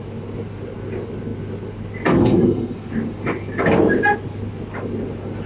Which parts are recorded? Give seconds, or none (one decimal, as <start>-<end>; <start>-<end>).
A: 0.0-2.2; 2.9-5.5